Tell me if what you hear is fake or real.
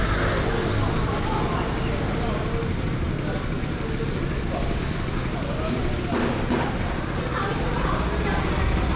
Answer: real